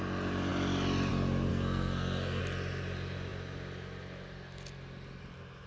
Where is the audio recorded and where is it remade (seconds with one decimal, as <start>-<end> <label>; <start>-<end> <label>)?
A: 0.0-1.5 recorded; 1.5-2.4 remade; 2.4-5.7 recorded